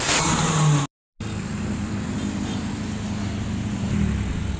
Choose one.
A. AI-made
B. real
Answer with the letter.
B